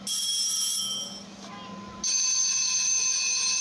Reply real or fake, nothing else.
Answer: real